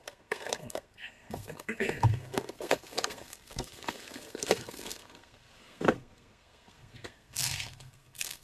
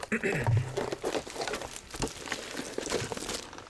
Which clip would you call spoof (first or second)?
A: first